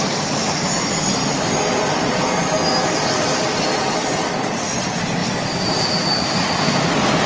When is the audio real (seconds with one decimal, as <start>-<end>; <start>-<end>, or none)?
0.0-2.1; 4.5-5.2; 5.8-7.3